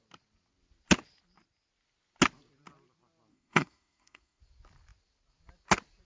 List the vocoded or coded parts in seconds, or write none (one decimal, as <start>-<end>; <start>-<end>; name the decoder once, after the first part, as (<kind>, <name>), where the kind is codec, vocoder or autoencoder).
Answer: 3.3-4.4 (codec, SNAC)